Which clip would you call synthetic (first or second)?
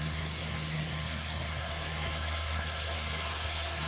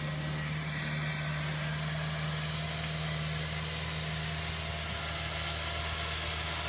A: first